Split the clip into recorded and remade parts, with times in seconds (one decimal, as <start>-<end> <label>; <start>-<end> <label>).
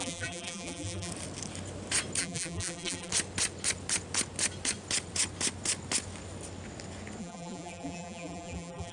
0.0-1.1 remade; 1.1-2.2 recorded; 2.2-3.1 remade; 3.1-7.2 recorded; 7.2-8.9 remade